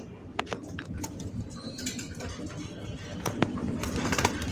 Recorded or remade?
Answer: recorded